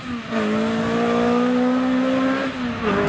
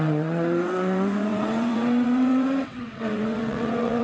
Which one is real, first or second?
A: first